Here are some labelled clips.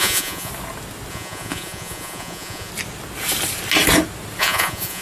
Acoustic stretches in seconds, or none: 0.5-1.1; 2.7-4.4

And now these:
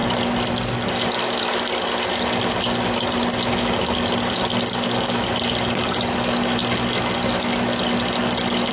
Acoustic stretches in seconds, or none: 0.0-8.7

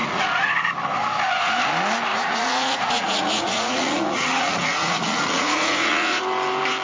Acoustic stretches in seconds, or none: 0.5-2.1; 6.2-6.8